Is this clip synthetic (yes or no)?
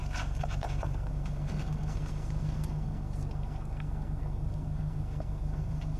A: yes